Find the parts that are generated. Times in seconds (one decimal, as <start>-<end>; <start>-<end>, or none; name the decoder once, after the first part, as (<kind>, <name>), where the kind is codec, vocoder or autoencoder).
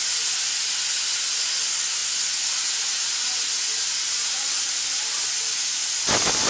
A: none